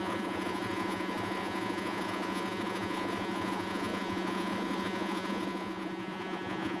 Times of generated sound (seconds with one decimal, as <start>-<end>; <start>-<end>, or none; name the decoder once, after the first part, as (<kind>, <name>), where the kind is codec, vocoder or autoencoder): 0.0-6.8 (vocoder, Vocos)